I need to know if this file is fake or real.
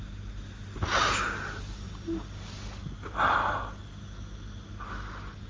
real